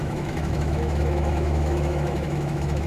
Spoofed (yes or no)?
yes